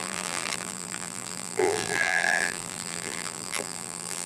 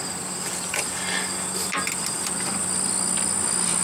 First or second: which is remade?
first